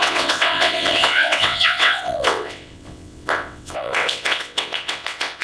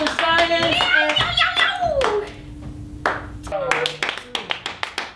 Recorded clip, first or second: second